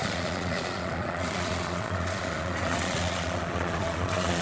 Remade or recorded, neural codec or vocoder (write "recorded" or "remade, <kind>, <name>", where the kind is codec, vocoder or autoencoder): remade, vocoder, Vocos